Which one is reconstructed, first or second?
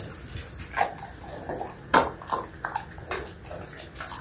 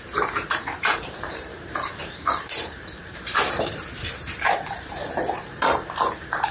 second